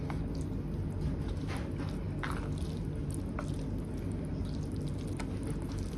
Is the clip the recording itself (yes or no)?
yes